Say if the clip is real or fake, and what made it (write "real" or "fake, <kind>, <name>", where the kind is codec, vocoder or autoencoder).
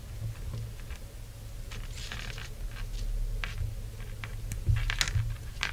real